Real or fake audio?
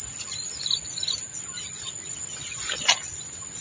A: real